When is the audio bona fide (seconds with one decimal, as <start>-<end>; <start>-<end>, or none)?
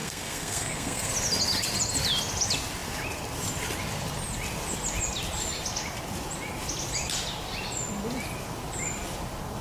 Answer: 1.1-9.6